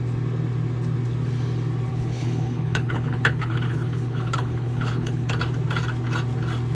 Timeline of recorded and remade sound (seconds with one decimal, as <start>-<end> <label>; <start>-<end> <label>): 0.0-1.9 recorded; 1.9-5.4 remade; 5.4-6.7 recorded